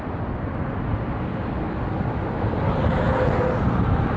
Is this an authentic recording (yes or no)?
yes